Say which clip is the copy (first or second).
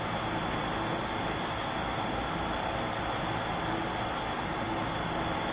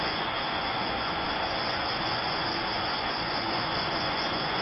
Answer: second